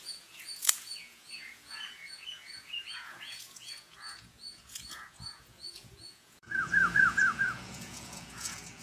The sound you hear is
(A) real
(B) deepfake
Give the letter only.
B